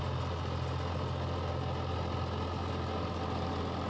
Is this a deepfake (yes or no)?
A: no